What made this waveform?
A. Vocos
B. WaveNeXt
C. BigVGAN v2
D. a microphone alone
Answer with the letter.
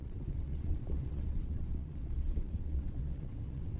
B